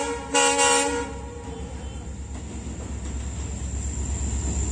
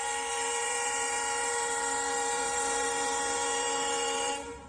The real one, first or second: first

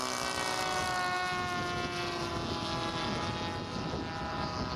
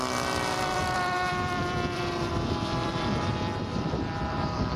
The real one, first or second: first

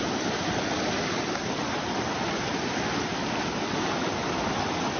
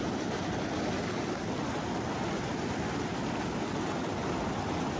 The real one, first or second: second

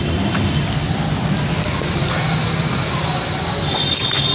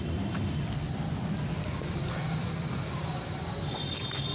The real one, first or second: first